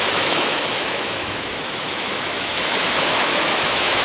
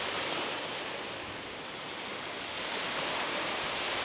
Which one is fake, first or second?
first